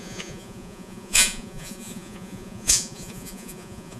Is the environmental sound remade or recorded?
remade